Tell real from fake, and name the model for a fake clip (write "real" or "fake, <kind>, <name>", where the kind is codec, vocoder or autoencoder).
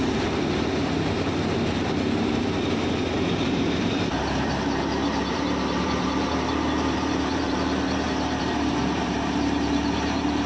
fake, vocoder, BigVGAN v2